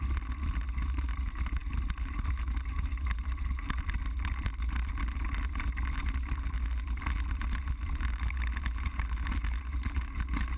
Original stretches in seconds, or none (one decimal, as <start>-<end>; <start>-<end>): 0.0-10.6